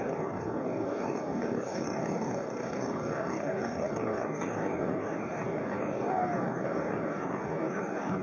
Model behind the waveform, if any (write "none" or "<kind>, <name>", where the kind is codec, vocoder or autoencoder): codec, DAC